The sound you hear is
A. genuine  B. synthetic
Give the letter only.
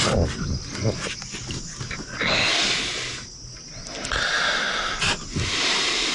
A